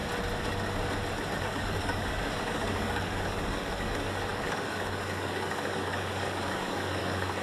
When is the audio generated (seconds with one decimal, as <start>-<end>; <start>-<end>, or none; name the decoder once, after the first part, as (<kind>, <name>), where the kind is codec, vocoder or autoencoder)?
1.4-7.4 (codec, DAC)

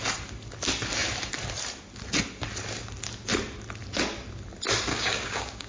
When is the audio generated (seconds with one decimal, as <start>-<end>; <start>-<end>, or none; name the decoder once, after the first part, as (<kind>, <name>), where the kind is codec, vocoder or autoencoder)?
4.9-5.7 (codec, DAC)

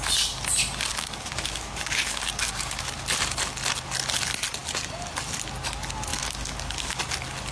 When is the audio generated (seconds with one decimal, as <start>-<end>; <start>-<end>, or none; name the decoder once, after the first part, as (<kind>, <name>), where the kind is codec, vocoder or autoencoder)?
0.9-3.0 (codec, DAC); 6.1-7.0

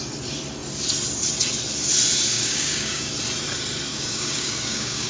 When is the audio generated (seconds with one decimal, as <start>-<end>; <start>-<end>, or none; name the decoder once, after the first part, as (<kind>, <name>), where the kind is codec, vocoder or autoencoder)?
2.3-3.1 (codec, DAC); 3.9-5.1

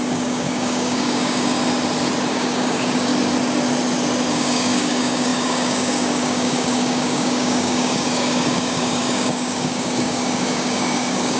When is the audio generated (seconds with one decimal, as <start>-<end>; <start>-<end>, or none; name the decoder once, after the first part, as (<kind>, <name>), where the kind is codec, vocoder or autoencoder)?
0.0-1.6 (codec, DAC); 2.3-3.1; 4.3-11.4

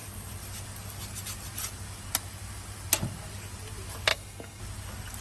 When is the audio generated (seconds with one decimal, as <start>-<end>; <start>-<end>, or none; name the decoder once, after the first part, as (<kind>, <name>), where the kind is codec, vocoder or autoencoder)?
4.1-4.6 (codec, DAC)